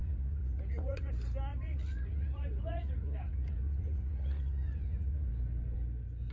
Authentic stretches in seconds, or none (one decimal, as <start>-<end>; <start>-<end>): 1.1-1.5; 5.3-6.3